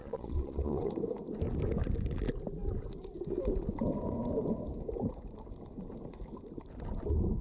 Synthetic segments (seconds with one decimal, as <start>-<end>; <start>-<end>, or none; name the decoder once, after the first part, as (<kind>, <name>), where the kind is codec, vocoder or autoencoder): 0.0-0.9 (vocoder, Vocos)